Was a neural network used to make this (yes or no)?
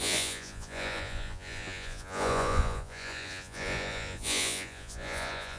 yes